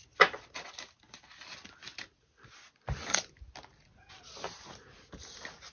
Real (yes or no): yes